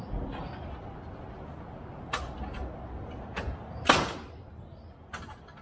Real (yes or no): yes